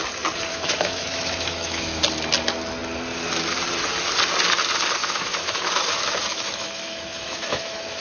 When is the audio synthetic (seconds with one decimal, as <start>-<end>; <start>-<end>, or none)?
0.5-2.0; 5.0-5.7; 6.3-8.0